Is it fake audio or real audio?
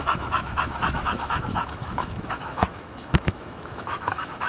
fake